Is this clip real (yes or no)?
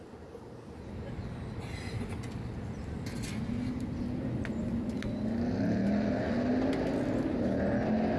yes